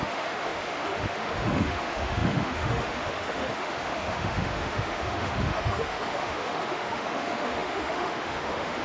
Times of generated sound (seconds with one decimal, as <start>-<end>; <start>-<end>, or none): 0.0-8.8